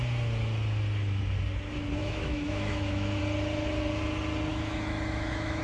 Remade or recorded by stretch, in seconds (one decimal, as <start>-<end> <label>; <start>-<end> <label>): 0.0-2.0 recorded; 2.0-3.2 remade; 3.2-4.5 recorded; 4.5-5.6 remade

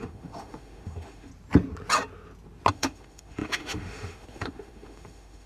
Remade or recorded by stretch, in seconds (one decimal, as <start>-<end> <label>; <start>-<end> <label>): 0.0-1.3 remade; 1.3-2.7 recorded; 2.7-5.5 remade